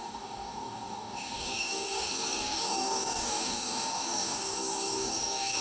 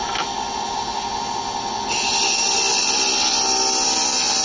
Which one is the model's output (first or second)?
first